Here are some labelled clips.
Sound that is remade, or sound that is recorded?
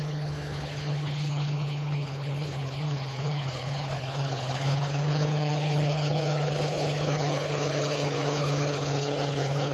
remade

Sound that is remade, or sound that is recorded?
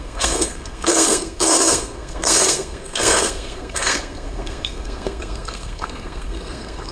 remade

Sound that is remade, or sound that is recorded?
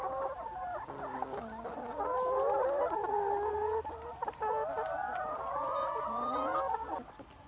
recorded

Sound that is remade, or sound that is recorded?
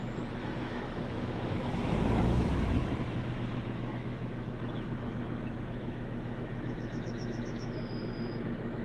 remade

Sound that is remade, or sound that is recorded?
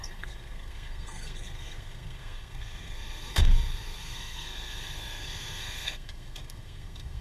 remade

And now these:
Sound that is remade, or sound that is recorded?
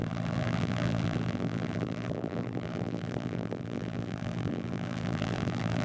remade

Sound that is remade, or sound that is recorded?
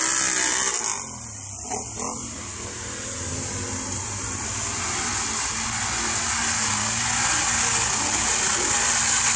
recorded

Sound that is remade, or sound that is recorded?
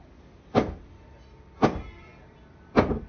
recorded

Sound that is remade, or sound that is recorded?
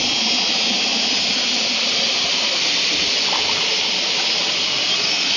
recorded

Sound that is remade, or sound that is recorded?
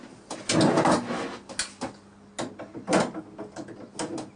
recorded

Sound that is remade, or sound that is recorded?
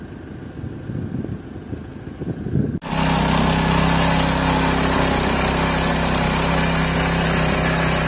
recorded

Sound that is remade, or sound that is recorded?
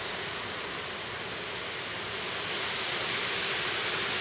recorded